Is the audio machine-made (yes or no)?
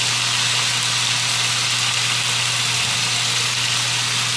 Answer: no